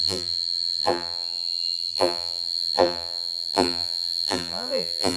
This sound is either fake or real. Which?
fake